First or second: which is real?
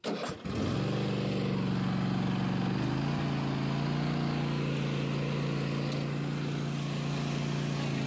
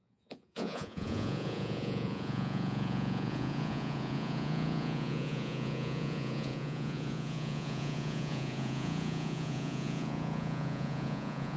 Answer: first